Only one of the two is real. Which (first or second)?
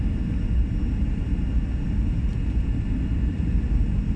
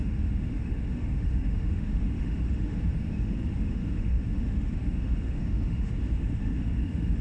first